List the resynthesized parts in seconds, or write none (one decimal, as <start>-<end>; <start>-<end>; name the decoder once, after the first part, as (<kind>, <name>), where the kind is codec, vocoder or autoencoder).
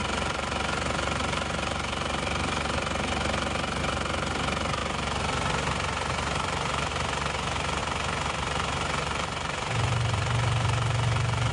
0.0-3.8 (vocoder, BigVGAN v2); 4.8-6.9; 7.8-11.5